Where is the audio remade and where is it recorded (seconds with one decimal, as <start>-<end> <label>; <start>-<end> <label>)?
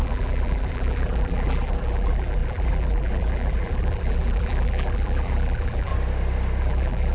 0.0-5.9 remade; 5.9-6.6 recorded; 6.6-7.1 remade